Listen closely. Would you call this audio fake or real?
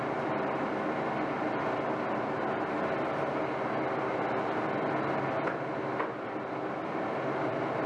real